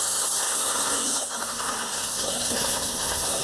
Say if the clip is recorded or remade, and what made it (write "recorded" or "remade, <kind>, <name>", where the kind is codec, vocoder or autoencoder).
remade, codec, SNAC